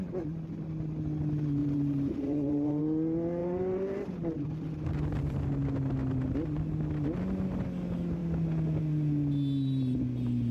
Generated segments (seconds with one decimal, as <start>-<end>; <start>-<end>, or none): 1.6-2.8; 3.4-5.4